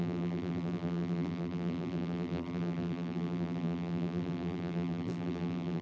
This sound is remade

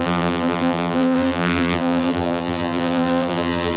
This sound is remade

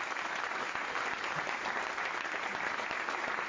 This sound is remade